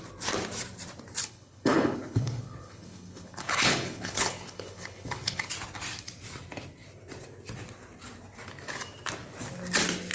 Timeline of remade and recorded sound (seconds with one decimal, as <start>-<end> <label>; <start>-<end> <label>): 0.0-1.2 recorded; 1.2-5.5 remade; 5.5-10.1 recorded